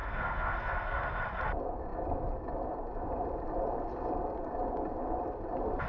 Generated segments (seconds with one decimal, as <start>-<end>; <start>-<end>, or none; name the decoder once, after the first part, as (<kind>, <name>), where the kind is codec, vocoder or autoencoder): 0.0-1.2 (codec, SNAC)